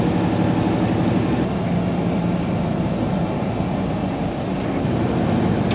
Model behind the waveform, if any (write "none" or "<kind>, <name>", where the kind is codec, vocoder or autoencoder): none